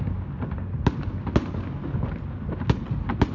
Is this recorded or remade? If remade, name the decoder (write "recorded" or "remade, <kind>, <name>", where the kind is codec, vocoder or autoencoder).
recorded